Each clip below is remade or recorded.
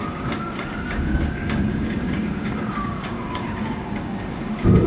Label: remade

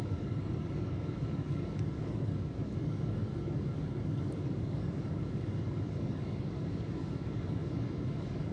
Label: remade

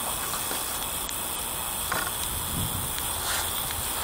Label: recorded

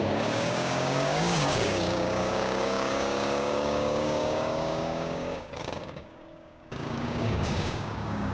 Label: remade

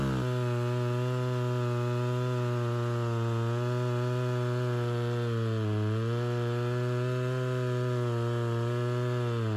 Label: recorded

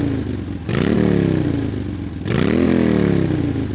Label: recorded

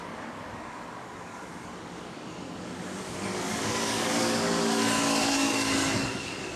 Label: remade